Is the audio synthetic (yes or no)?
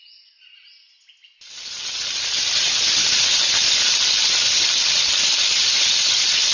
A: no